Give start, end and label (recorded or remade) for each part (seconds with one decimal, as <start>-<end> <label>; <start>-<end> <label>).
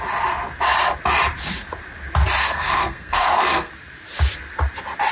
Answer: 0.0-2.4 recorded; 2.4-3.7 remade; 3.7-5.1 recorded